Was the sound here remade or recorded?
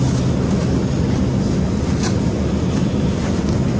recorded